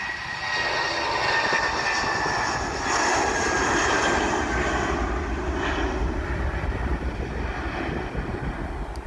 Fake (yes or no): no